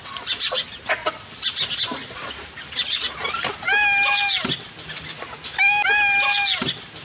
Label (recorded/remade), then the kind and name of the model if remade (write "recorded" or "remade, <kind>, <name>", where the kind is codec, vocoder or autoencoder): recorded